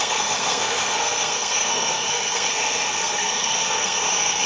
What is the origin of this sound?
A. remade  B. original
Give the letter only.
A